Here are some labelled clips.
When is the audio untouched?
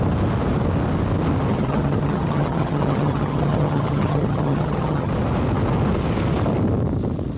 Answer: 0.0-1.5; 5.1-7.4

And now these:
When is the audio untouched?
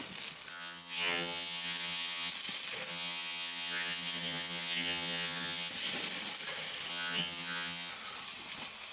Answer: 0.0-0.5; 2.3-2.9; 5.7-6.9; 7.9-8.9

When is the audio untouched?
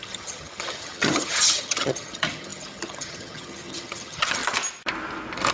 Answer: 4.4-5.5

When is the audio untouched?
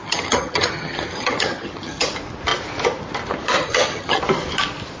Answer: 2.1-3.6; 4.2-5.0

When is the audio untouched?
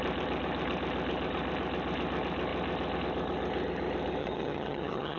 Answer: 0.0-4.2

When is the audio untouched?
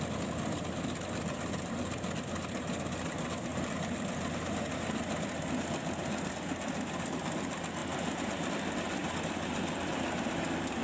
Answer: 0.0-10.8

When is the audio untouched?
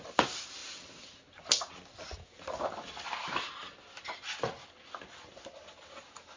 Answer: 0.0-6.4